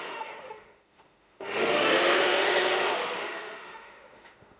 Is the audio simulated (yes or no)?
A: yes